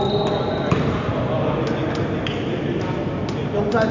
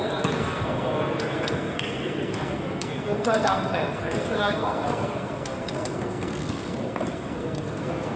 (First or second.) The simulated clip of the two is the second